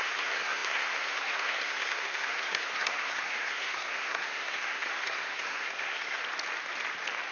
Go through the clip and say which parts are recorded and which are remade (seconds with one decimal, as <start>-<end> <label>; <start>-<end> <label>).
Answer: 0.0-6.2 remade; 6.2-7.3 recorded